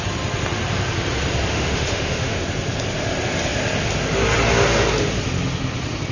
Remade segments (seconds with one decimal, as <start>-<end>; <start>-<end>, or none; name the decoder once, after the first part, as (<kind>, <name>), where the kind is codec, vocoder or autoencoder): 1.5-2.4 (autoencoder, DAC-VAE)